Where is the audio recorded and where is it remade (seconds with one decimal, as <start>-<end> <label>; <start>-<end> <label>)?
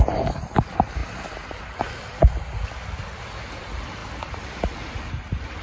0.0-5.6 recorded